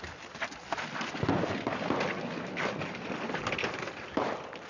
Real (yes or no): yes